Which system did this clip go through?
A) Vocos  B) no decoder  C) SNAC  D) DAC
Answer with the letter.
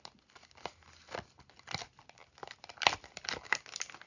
B